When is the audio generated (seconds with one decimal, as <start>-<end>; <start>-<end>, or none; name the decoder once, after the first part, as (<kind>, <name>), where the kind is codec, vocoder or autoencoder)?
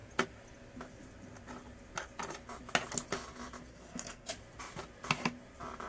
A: 3.7-4.3 (codec, SNAC)